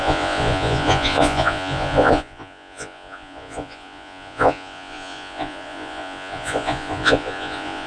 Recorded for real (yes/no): no